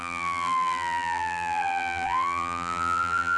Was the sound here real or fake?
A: fake